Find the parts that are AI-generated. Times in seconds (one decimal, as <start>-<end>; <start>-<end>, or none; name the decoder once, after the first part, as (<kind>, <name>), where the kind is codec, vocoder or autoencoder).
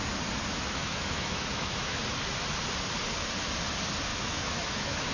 0.5-2.0 (autoencoder, DAC-VAE); 4.1-5.1